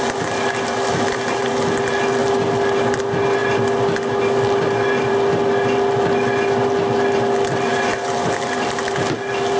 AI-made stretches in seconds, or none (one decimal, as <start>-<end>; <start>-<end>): none